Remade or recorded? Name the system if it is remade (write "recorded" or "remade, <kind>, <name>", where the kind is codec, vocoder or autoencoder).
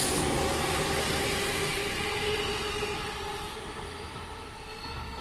recorded